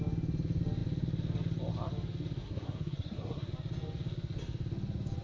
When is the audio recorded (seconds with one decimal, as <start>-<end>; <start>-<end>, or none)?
0.0-2.4; 3.5-5.2